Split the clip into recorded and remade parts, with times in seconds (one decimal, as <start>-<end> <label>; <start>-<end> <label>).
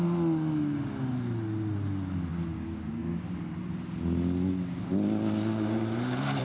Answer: 0.0-6.4 recorded